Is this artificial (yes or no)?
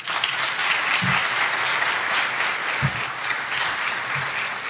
no